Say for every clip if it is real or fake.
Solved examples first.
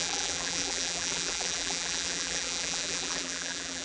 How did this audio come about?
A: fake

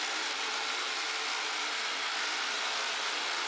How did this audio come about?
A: fake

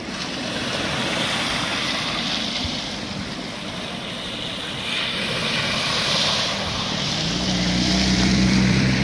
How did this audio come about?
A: fake